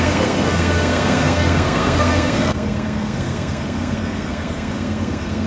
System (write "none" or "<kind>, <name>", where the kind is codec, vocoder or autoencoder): codec, SNAC